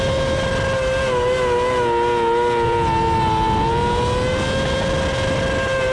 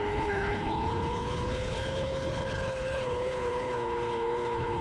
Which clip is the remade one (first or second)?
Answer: second